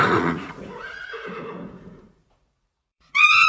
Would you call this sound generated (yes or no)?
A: yes